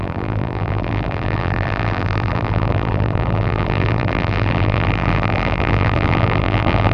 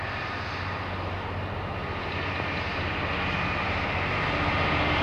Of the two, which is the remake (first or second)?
first